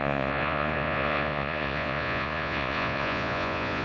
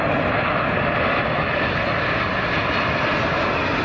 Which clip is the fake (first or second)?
first